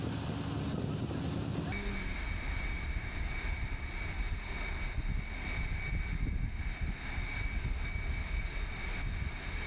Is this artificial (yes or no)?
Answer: no